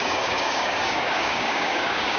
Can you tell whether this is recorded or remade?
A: remade